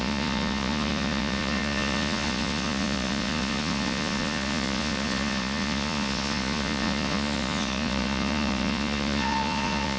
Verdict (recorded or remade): remade